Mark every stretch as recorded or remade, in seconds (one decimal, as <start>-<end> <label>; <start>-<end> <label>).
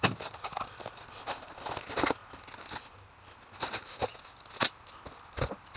0.0-5.8 recorded